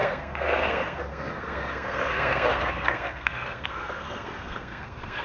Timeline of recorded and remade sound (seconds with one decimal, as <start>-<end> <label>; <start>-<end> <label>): 0.0-5.2 remade